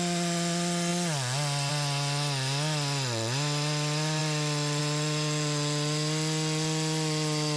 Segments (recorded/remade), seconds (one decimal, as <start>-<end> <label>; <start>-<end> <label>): 0.0-7.6 recorded